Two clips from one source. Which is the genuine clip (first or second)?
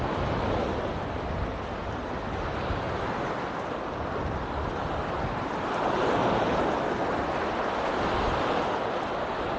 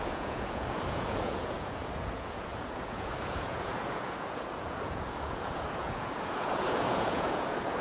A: first